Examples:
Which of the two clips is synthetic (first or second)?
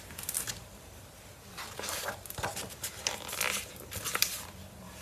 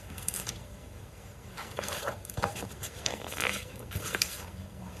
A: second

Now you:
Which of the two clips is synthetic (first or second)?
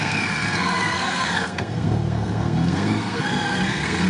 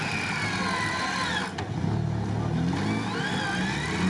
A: first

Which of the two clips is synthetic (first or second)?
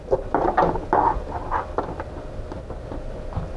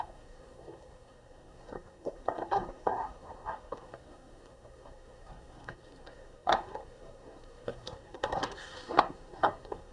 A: second